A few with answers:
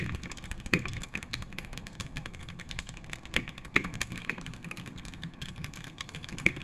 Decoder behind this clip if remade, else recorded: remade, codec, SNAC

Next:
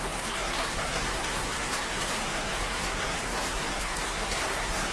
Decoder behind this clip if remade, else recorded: remade, codec, SNAC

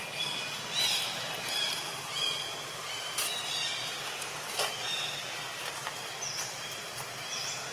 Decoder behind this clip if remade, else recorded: recorded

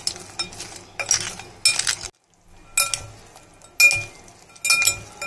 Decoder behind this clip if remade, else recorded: recorded